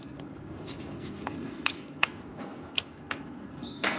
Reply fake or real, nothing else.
fake